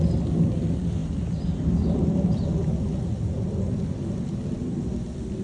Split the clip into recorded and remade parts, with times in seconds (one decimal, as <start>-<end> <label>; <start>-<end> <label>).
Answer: 0.0-5.4 recorded